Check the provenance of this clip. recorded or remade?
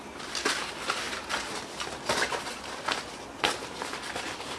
remade